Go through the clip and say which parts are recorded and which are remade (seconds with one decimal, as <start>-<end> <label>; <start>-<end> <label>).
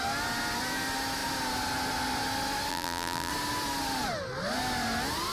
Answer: 0.0-2.7 recorded; 2.7-3.3 remade; 3.3-5.3 recorded